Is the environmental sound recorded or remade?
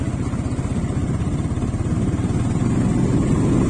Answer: recorded